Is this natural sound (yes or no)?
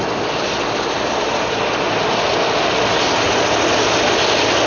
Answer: yes